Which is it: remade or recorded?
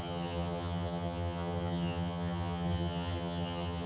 remade